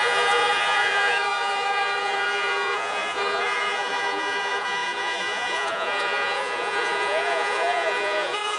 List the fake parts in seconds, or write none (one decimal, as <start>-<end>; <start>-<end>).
0.0-8.6